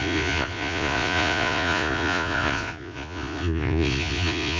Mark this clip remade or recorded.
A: remade